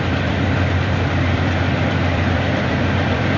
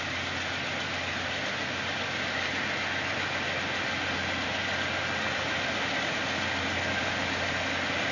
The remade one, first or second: first